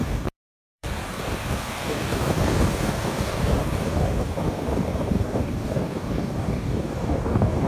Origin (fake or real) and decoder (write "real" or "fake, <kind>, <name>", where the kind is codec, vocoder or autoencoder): fake, codec, DAC